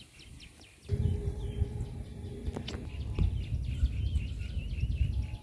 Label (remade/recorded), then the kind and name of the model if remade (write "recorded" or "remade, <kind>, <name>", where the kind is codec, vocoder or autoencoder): recorded